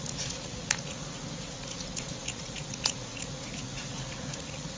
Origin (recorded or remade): remade